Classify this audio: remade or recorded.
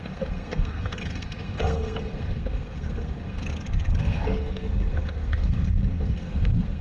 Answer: remade